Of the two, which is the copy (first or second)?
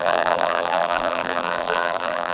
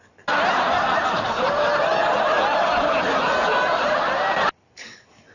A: first